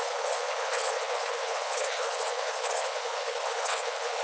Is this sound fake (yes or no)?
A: yes